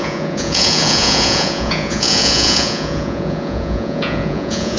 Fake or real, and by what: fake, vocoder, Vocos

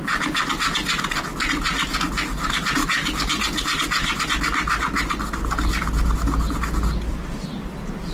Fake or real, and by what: real